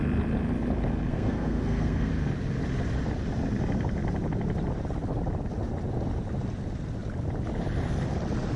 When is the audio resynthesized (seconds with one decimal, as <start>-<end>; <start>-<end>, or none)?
1.1-2.1